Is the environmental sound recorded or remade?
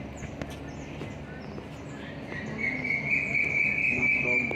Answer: recorded